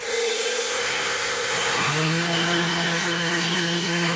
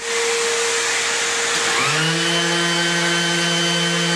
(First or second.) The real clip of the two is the second